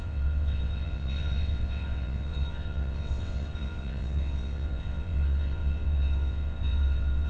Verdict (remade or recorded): remade